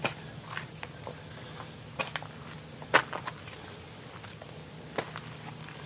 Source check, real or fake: real